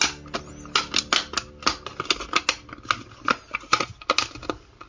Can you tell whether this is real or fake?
real